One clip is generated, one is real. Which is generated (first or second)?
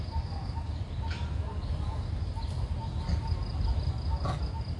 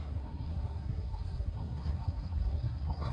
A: second